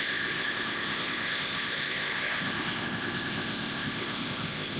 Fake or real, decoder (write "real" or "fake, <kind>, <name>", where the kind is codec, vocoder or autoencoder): fake, codec, ZipCodec